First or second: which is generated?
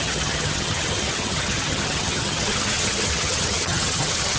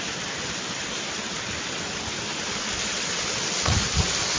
first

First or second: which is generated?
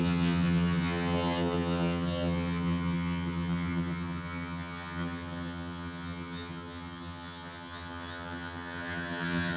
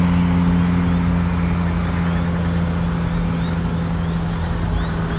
first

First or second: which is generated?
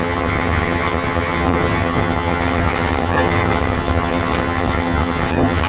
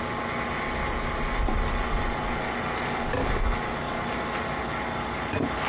first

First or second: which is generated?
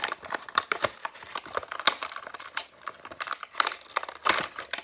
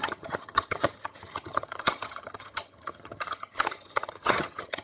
second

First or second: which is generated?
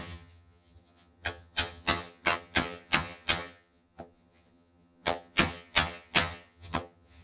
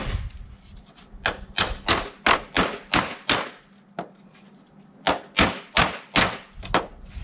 first